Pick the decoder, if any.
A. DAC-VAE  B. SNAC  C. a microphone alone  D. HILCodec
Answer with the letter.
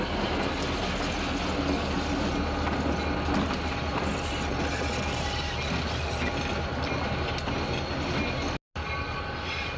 C